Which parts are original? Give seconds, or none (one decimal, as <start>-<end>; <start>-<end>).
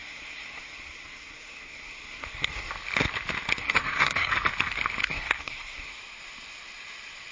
2.7-3.6; 4.3-5.0; 5.9-7.3